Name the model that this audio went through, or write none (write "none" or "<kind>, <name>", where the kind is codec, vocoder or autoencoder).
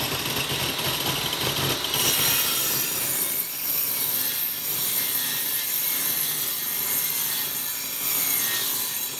none